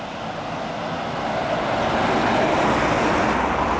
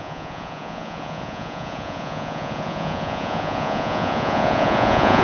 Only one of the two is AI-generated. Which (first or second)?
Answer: second